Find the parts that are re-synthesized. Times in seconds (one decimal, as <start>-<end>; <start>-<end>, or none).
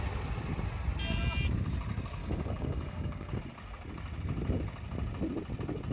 2.2-3.4